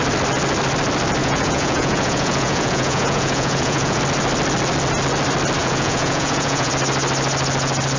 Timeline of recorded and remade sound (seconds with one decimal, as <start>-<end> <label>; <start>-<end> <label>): 0.0-1.2 recorded; 1.2-4.0 remade; 4.0-5.6 recorded; 5.6-6.7 remade; 6.7-8.0 recorded